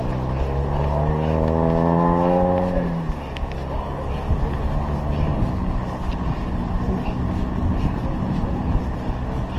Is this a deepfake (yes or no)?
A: no